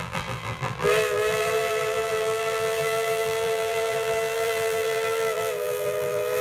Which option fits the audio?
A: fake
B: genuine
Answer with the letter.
A